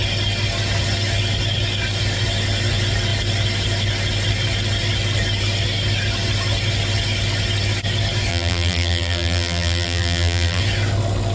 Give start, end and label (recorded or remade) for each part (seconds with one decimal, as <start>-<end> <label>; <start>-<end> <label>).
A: 0.0-8.3 recorded; 8.3-10.6 remade; 10.6-11.3 recorded